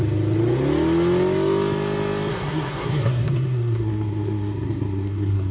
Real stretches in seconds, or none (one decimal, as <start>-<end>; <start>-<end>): 0.0-2.3